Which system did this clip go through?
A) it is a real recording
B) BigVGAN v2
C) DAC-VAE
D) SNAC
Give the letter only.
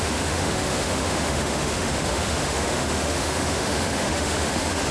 C